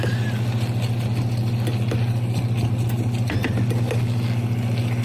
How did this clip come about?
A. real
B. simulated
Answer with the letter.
A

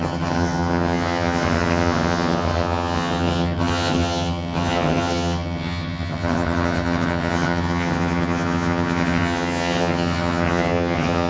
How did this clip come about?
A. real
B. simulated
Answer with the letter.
B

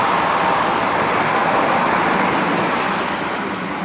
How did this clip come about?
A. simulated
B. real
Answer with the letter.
B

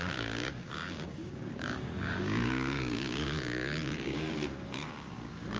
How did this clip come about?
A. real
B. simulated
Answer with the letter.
B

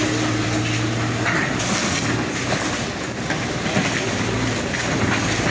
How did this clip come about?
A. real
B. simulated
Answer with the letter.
A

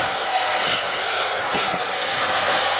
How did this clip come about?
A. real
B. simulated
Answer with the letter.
B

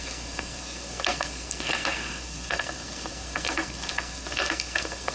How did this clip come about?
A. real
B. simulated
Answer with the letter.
B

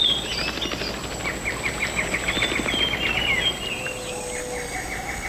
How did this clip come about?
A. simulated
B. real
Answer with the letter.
B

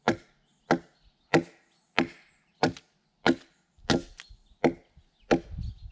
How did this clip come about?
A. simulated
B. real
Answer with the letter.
B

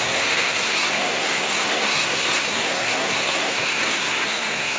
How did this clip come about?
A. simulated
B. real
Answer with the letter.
A